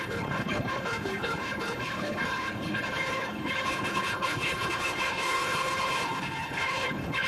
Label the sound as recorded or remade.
remade